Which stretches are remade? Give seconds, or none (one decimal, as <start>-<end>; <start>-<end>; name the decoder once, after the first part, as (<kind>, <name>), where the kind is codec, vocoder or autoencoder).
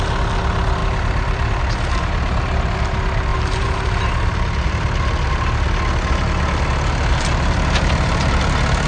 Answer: 0.8-1.6 (vocoder, BigVGAN v2); 3.3-4.0; 7.1-8.4